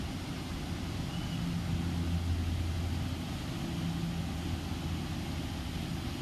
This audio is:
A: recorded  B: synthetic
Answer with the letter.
A